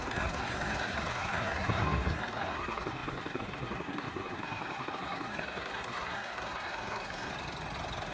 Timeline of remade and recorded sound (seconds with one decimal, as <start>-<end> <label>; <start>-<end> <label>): 0.0-7.3 remade; 7.3-8.1 recorded